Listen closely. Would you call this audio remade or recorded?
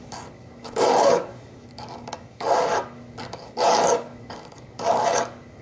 remade